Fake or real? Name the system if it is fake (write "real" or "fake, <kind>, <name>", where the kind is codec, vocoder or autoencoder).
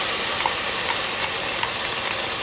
real